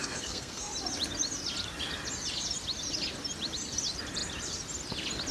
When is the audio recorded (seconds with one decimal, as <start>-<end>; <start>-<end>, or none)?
0.7-5.3